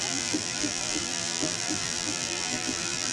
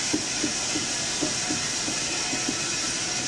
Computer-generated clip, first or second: first